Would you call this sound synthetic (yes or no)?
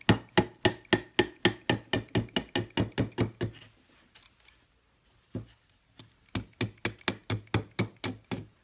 no